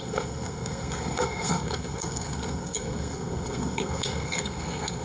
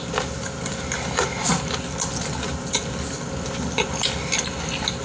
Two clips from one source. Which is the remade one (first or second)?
first